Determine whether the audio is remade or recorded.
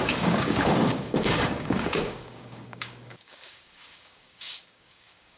remade